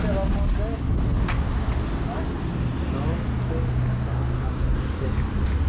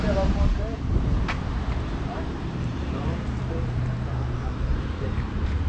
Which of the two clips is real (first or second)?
first